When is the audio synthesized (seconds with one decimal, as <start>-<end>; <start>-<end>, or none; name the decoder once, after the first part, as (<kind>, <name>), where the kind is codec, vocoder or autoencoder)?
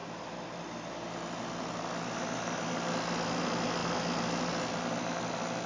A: none